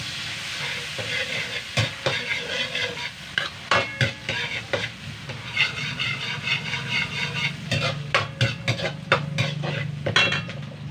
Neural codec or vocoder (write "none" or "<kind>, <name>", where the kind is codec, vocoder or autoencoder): none